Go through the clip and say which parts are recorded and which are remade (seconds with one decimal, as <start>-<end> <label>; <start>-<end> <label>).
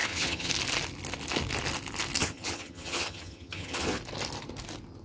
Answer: 0.0-0.5 remade; 0.5-2.2 recorded; 2.2-4.0 remade; 4.0-5.0 recorded